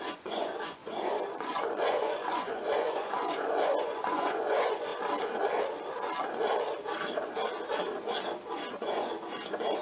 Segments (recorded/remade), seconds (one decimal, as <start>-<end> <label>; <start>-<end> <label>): 0.0-4.9 remade; 4.9-8.7 recorded; 8.7-9.8 remade